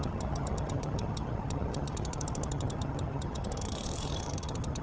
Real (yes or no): no